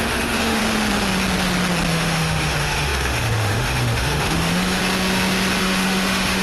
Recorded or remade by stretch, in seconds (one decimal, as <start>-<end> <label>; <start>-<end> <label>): 0.0-0.6 remade; 0.6-1.9 recorded; 1.9-4.8 remade; 4.8-5.6 recorded; 5.6-6.4 remade